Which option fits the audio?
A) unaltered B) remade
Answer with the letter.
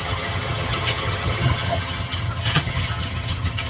B